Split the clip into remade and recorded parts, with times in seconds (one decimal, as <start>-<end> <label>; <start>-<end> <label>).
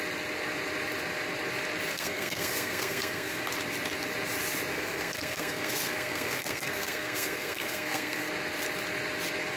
0.0-1.9 recorded; 1.9-3.4 remade; 3.4-4.7 recorded; 4.7-8.3 remade; 8.3-9.6 recorded